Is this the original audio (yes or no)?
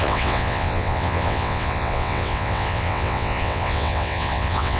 no